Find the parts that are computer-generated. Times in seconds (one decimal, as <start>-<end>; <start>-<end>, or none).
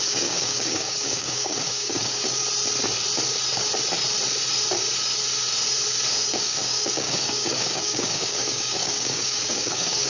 0.0-2.4; 6.1-10.1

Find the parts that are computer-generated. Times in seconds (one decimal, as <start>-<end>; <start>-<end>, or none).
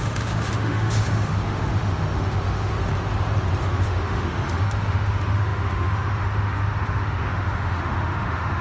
0.0-2.9; 3.6-8.6